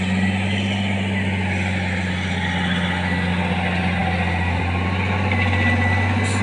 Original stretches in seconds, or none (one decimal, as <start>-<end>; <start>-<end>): 0.0-6.4